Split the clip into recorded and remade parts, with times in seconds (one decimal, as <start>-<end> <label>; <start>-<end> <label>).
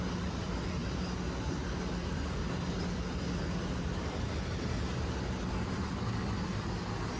0.0-7.2 recorded